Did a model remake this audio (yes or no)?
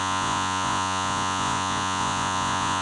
yes